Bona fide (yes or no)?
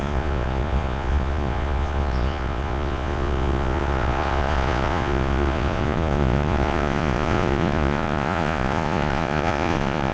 no